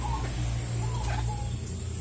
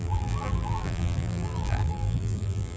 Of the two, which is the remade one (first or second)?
second